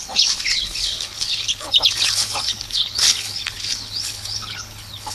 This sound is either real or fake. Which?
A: fake